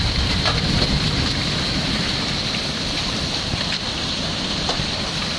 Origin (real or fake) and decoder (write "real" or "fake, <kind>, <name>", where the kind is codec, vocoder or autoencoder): fake, vocoder, BigVGAN v2